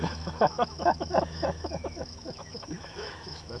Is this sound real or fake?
fake